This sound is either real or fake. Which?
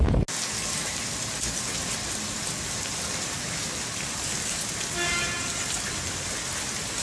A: real